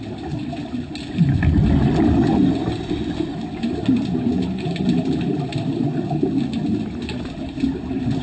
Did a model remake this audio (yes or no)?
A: no